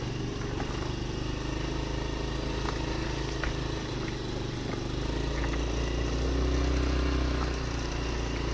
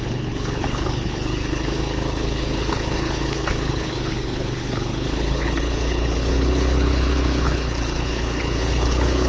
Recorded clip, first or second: first